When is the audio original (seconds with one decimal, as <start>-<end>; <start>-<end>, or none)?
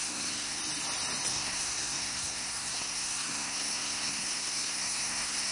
0.6-1.3